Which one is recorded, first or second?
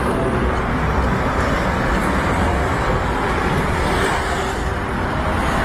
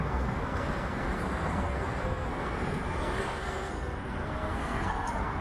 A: first